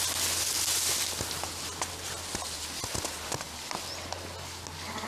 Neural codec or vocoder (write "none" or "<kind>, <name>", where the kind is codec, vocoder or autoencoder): none